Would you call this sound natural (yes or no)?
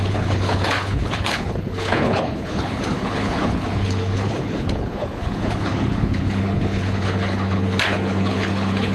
no